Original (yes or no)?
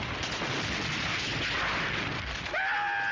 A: yes